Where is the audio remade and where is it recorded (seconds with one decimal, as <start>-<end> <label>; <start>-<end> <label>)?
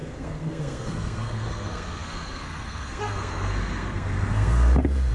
0.0-5.1 remade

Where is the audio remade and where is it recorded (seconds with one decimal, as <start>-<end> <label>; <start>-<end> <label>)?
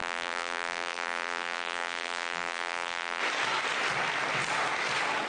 0.0-3.2 remade; 3.2-5.3 recorded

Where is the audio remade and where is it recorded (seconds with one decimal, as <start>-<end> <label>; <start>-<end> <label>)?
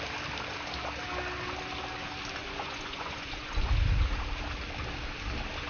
0.0-2.4 recorded; 2.4-3.7 remade; 3.7-5.7 recorded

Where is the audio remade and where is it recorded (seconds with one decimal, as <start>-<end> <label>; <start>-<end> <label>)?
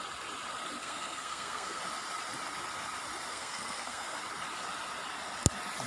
0.0-0.8 recorded; 0.8-1.8 remade; 1.8-3.3 recorded; 3.3-4.2 remade; 4.2-5.9 recorded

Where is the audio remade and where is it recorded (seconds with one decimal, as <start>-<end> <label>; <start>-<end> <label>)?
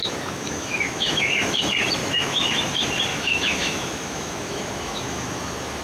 0.0-1.6 remade; 1.6-2.0 recorded; 2.0-2.6 remade; 2.6-3.1 recorded; 3.1-5.8 remade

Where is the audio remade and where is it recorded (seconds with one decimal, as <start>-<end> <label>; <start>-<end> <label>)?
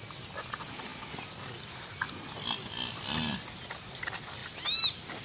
0.0-5.2 recorded